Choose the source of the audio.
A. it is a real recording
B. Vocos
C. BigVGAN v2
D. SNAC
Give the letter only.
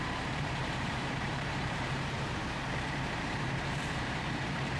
C